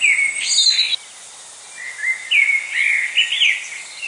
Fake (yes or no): no